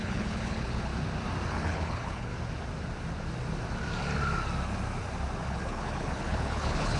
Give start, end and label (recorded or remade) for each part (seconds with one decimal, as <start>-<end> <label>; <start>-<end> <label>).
0.0-0.9 remade; 0.9-1.5 recorded; 1.5-2.3 remade; 2.3-5.4 recorded; 5.4-7.0 remade